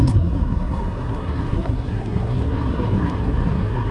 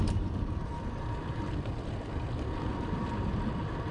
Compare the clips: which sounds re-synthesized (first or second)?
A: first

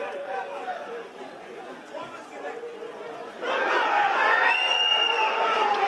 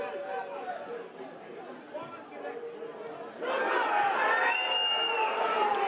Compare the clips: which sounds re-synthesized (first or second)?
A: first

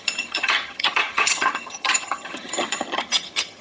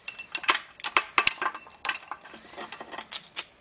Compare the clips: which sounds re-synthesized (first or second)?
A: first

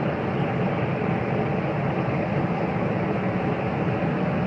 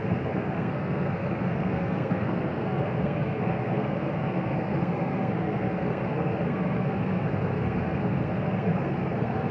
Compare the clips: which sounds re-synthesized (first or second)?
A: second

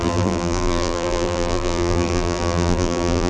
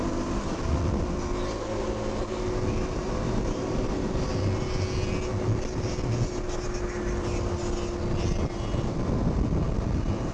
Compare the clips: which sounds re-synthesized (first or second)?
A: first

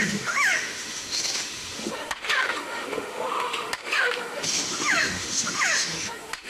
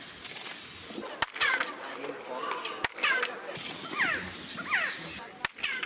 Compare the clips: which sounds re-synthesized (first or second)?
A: first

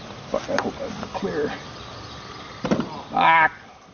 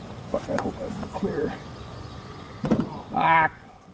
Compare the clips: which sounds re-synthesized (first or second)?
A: second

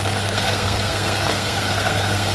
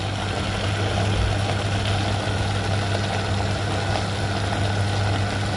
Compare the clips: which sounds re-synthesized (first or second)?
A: first